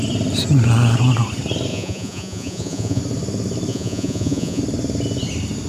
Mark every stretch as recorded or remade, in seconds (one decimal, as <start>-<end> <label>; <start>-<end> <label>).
0.0-1.7 recorded; 1.7-3.0 remade; 3.0-3.7 recorded; 3.7-4.6 remade; 4.6-5.7 recorded